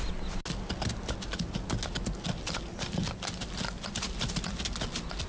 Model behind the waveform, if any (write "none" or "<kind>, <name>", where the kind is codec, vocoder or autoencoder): none